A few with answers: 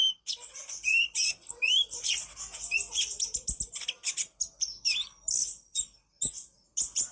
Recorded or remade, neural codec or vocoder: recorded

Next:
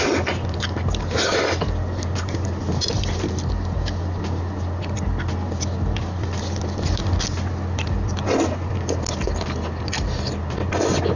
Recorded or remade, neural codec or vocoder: recorded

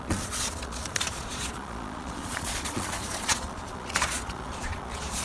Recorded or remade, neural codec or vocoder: remade, vocoder, Vocos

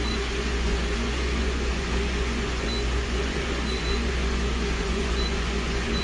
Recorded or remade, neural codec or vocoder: remade, vocoder, Vocos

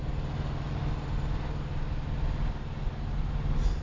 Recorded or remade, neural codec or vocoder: recorded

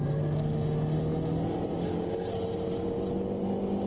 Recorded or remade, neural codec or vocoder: recorded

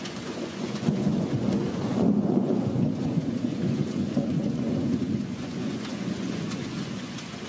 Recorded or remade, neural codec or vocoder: remade, vocoder, Vocos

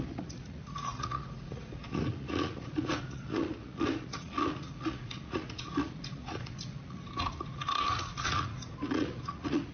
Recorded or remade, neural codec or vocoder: remade, vocoder, Vocos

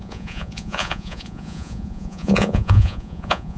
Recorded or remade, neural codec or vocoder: remade, vocoder, Vocos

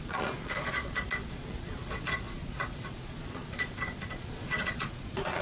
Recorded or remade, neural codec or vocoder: remade, vocoder, Vocos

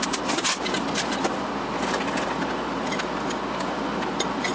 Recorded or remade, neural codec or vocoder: recorded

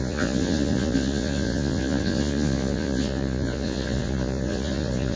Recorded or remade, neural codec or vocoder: remade, vocoder, Vocos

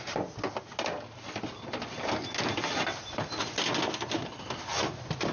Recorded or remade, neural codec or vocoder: recorded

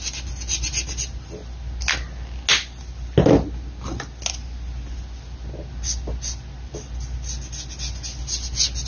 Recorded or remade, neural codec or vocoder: recorded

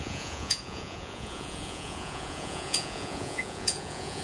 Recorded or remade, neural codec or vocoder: remade, vocoder, Vocos